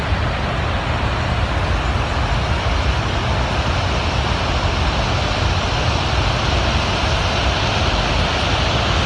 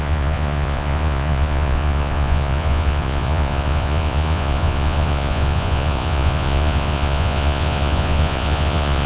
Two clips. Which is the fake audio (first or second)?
second